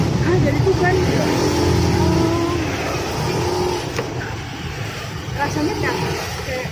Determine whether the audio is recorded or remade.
recorded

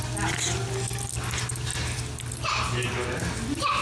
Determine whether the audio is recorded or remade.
recorded